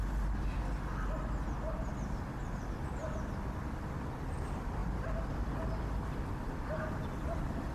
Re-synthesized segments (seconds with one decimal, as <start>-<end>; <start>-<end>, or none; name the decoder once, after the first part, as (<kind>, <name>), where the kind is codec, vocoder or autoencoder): none